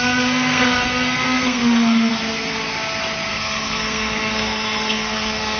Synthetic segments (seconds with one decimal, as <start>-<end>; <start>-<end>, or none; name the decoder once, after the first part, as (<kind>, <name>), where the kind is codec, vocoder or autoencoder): 0.0-2.1 (codec, SNAC); 3.3-5.6